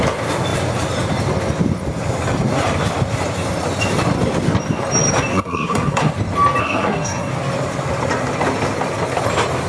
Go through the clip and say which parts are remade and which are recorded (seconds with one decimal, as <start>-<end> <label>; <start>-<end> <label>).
0.0-5.3 recorded; 5.3-6.1 remade; 6.1-6.6 recorded; 6.6-7.3 remade; 7.3-9.7 recorded